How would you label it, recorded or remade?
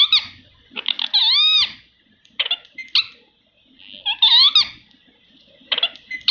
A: recorded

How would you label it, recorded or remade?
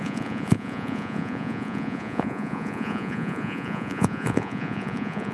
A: remade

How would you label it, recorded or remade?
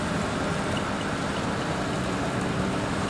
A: recorded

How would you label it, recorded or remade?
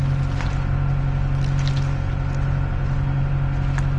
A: recorded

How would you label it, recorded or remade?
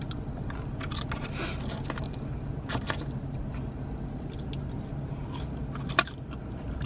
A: recorded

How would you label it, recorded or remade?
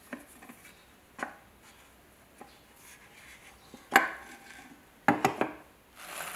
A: recorded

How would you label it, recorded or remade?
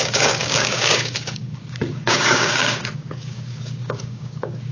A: remade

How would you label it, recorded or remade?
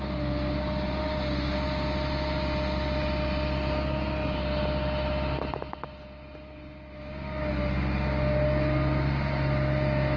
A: recorded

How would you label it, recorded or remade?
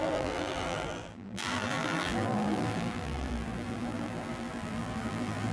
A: remade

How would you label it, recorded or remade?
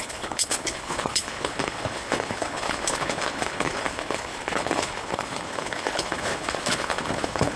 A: remade